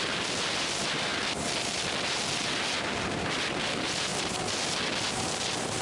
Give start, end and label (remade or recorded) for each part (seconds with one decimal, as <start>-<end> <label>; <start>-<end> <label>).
0.0-1.1 remade; 1.1-2.8 recorded; 2.8-4.1 remade; 4.1-5.8 recorded

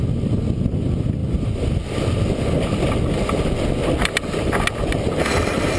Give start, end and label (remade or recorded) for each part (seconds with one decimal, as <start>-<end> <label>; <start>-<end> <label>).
0.0-1.2 recorded; 1.2-2.4 remade; 2.4-5.8 recorded

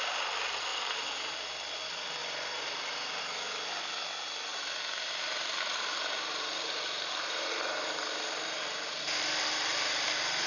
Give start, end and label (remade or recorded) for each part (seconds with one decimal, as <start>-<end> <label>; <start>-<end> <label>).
0.0-0.7 recorded; 0.7-1.5 remade; 1.5-2.2 recorded; 2.2-3.2 remade; 3.2-4.5 recorded; 4.5-9.0 remade; 9.0-10.5 recorded